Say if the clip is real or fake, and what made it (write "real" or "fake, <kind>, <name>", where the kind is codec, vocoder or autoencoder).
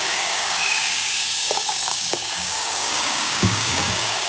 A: fake, codec, DAC